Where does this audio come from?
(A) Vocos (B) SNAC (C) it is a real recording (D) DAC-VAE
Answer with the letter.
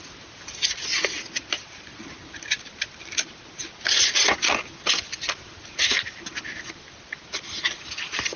C